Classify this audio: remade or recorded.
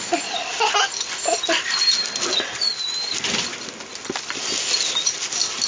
recorded